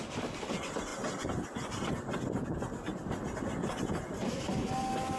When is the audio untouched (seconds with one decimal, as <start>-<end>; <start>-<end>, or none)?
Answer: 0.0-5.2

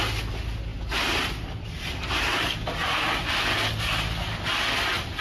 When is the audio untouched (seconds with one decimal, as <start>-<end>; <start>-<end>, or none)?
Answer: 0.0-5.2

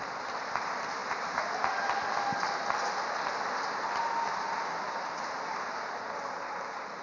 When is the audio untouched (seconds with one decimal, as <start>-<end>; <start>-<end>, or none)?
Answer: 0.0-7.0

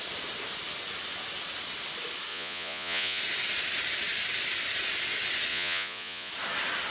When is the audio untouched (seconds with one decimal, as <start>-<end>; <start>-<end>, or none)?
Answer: 0.0-2.3; 3.2-5.5; 6.3-6.9

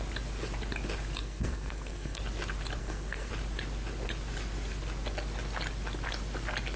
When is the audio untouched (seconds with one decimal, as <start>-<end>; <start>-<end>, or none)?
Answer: 0.0-1.2; 2.2-2.8; 3.3-6.8

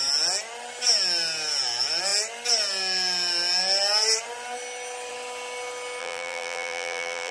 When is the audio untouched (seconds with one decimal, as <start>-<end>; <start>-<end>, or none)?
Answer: 0.0-6.0

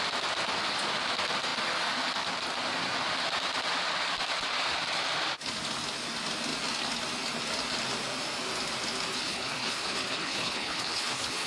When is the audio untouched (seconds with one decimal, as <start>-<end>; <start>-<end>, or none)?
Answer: 0.0-9.1

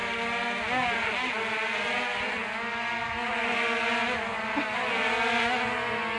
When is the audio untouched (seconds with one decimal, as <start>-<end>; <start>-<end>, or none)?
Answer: 0.0-6.2